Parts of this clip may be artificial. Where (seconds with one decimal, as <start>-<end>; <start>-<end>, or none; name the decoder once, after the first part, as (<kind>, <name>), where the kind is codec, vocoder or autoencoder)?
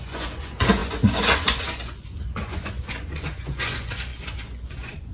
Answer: 0.0-5.1 (vocoder, Vocos)